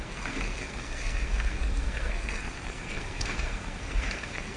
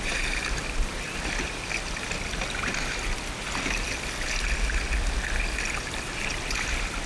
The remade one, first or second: first